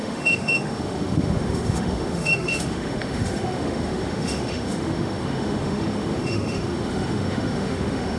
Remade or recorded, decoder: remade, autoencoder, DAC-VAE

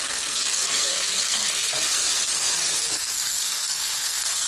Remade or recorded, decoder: remade, codec, SNAC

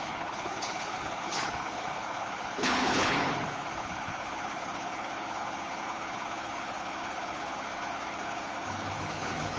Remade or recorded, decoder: remade, codec, HILCodec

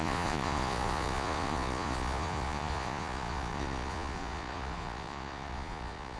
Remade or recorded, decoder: remade, vocoder, Vocos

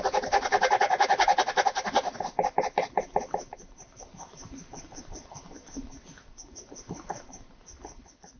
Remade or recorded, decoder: recorded